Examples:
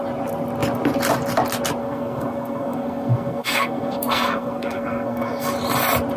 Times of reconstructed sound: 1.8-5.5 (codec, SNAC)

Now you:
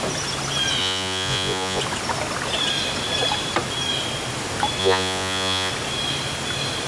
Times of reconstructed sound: 0.8-1.8 (vocoder, Vocos); 4.8-5.7

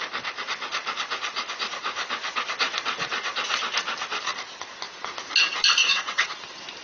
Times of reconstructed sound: 5.8-6.3 (vocoder, WaveNeXt)

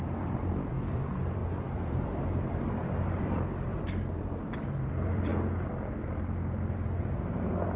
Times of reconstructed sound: 0.0-5.3 (vocoder, BigVGAN v2); 7.0-7.8

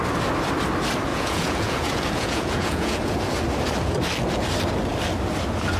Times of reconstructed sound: 1.1-3.2 (vocoder, Vocos)

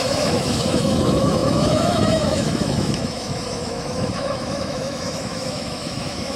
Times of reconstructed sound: 0.0-6.4 (autoencoder, DAC-VAE)

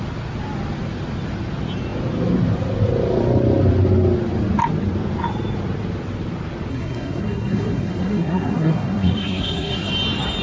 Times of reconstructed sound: 6.7-9.9 (codec, SNAC)